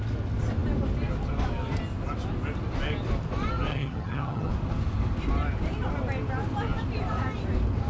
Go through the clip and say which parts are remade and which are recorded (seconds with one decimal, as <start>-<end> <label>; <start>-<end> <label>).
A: 0.0-3.7 recorded; 3.7-4.5 remade; 4.5-7.9 recorded